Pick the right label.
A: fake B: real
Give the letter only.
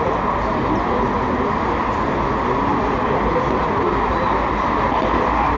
B